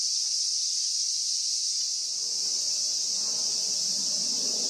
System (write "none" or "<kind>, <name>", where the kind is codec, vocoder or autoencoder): none